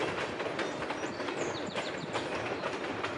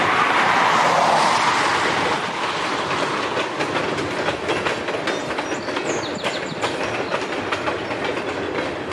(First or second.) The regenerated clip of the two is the first